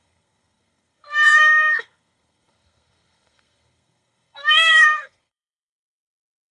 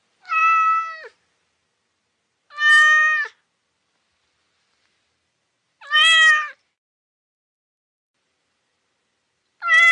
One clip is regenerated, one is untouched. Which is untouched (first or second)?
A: second